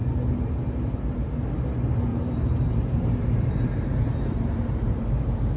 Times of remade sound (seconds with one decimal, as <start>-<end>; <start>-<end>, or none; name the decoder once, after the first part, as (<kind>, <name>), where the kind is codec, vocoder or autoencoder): 2.1-5.6 (vocoder, BigVGAN v2)